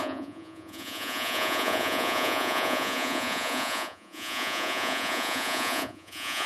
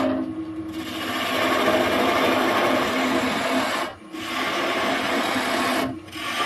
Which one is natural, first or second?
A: second